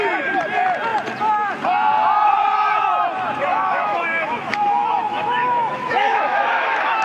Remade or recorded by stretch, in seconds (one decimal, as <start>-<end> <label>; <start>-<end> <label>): 0.0-3.5 recorded; 3.5-7.0 remade

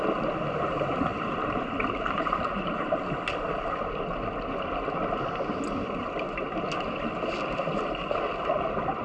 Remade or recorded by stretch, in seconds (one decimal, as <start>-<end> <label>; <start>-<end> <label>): 0.0-1.1 recorded; 1.1-2.9 remade; 2.9-9.0 recorded

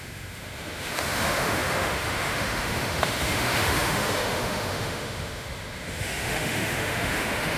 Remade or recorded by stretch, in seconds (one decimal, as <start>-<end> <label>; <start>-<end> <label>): 0.0-7.6 remade

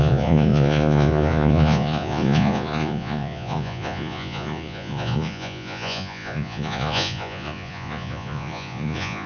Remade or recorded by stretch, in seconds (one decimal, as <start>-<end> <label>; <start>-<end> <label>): 0.0-9.3 remade